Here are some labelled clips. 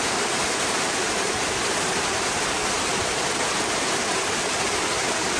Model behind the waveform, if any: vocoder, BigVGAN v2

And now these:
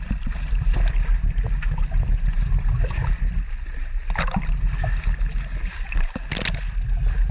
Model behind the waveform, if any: none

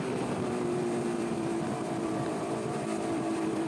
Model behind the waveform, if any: vocoder, BigVGAN v2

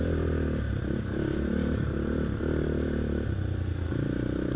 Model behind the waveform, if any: none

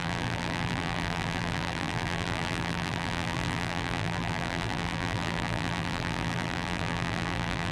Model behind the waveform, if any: vocoder, BigVGAN v2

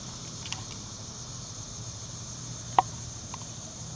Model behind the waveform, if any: vocoder, BigVGAN v2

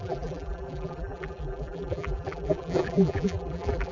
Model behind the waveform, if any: vocoder, BigVGAN v2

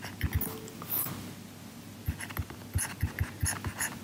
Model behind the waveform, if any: none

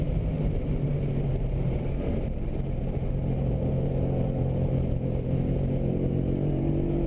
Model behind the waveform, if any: vocoder, BigVGAN v2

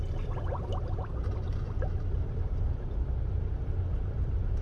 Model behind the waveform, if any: vocoder, BigVGAN v2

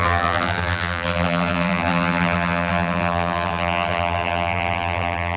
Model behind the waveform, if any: vocoder, BigVGAN v2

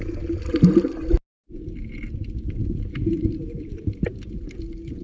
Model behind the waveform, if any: none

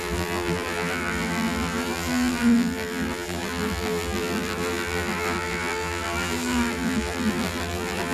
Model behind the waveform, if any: vocoder, BigVGAN v2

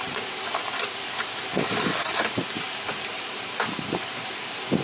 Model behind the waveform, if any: vocoder, BigVGAN v2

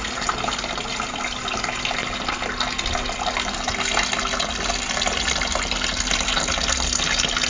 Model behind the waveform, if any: none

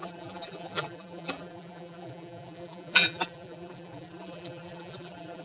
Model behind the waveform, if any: vocoder, BigVGAN v2